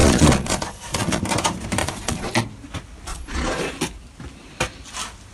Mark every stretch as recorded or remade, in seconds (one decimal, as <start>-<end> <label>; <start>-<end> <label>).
0.0-1.2 remade; 1.2-1.8 recorded; 1.8-2.4 remade; 2.4-3.1 recorded; 3.1-3.7 remade; 3.7-5.3 recorded